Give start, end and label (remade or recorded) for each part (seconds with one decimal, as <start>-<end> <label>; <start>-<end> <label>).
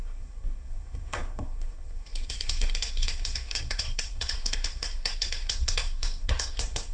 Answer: 0.0-6.9 remade